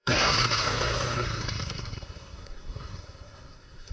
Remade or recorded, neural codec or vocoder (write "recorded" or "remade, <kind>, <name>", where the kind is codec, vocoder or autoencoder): remade, codec, SNAC